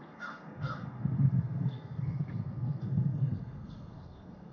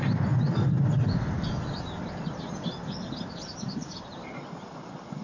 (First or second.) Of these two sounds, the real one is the second